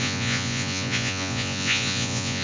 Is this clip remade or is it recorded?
remade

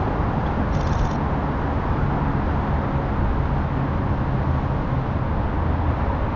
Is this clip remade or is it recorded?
recorded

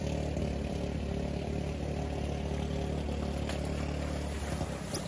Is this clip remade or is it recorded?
recorded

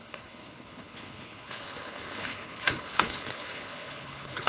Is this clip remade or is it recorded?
remade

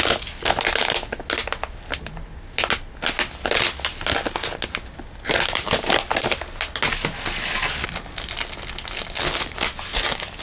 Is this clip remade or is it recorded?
recorded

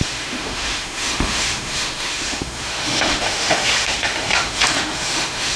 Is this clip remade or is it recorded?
remade